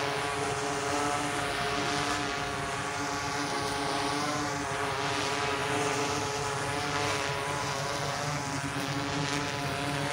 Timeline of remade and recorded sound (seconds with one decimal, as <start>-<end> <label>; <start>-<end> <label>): 0.0-10.1 recorded